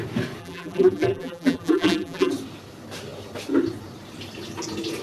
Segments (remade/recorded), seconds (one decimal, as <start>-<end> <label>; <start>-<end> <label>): 0.0-0.4 recorded; 0.4-2.3 remade; 2.3-5.0 recorded